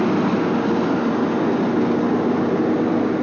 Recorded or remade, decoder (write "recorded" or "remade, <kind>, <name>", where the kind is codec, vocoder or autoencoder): recorded